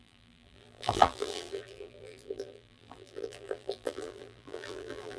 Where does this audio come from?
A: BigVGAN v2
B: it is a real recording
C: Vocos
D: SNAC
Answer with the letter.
A